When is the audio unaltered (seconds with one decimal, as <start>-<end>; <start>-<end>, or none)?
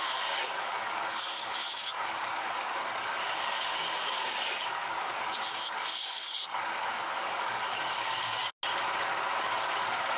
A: 8.4-9.0